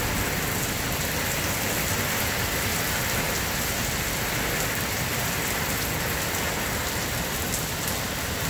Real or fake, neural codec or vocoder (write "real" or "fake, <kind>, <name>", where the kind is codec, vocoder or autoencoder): real